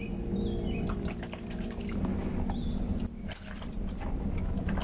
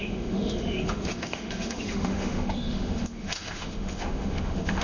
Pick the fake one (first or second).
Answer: second